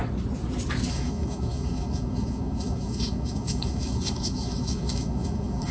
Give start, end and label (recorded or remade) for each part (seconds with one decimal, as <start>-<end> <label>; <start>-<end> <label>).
0.0-0.9 recorded; 0.9-5.7 remade